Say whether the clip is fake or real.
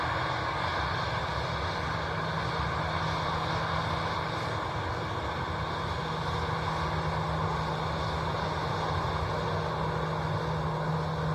real